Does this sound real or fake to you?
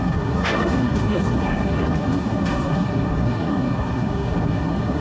fake